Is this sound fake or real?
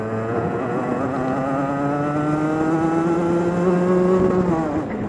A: real